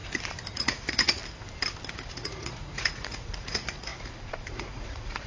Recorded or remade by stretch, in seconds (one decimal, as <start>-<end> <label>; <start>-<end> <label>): 0.0-0.5 recorded; 0.5-1.2 remade; 1.2-1.9 recorded; 1.9-3.9 remade; 3.9-4.5 recorded; 4.5-5.3 remade